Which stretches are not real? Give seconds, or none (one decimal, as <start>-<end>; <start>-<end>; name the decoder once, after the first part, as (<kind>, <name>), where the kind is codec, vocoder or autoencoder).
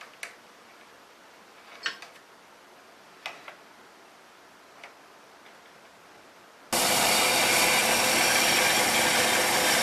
none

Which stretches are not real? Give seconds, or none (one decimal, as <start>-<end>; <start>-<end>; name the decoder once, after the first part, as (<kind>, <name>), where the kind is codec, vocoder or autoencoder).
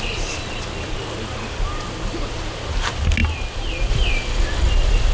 none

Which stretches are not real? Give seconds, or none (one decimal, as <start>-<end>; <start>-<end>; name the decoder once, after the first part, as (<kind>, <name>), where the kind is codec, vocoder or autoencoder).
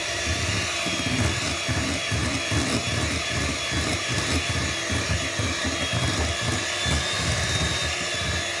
none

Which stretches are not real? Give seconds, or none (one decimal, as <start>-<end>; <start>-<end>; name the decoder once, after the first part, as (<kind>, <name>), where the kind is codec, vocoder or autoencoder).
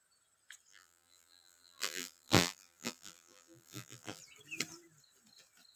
0.7-4.2 (vocoder, BigVGAN v2)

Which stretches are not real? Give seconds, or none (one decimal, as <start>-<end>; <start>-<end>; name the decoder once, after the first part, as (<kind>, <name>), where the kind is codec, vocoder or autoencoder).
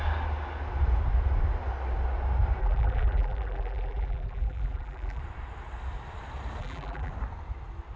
2.6-5.2 (vocoder, BigVGAN v2); 6.6-7.1